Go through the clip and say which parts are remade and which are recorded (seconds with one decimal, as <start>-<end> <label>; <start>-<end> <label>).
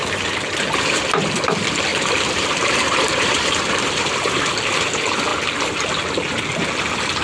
0.0-0.9 remade; 0.9-1.9 recorded; 1.9-4.6 remade; 4.6-7.2 recorded